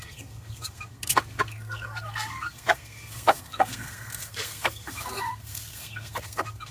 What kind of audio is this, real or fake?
fake